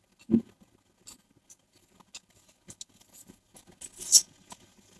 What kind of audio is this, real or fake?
real